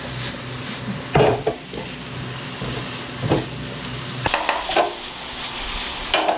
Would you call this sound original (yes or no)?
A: yes